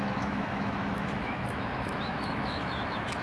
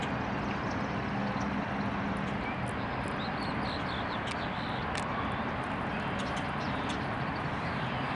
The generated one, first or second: first